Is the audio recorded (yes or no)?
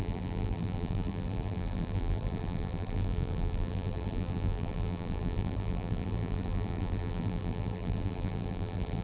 no